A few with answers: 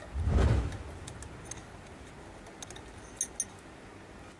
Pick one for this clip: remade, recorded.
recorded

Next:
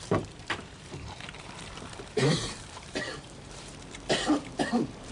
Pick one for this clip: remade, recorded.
remade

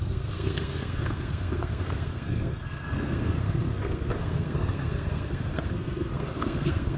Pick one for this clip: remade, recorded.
remade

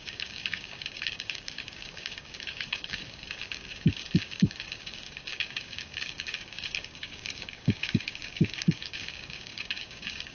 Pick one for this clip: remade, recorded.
remade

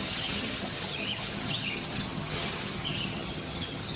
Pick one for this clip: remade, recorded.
remade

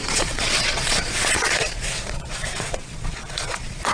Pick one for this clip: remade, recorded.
remade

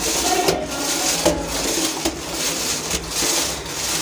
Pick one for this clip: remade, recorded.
recorded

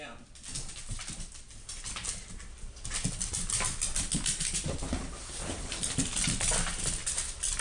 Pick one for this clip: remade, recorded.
recorded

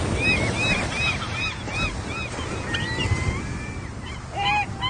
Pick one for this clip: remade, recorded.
recorded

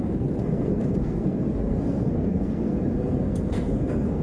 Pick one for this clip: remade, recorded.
remade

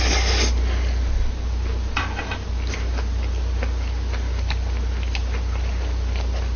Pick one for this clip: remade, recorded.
recorded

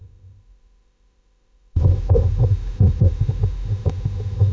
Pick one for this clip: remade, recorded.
remade